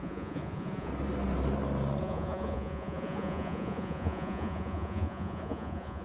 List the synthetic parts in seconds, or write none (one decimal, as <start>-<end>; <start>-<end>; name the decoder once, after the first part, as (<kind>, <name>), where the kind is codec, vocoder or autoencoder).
0.0-0.9 (vocoder, Vocos); 2.0-6.0